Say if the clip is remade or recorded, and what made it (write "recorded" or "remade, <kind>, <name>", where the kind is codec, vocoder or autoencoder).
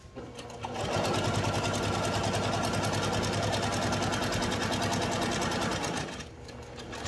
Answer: recorded